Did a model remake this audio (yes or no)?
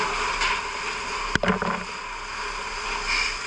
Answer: no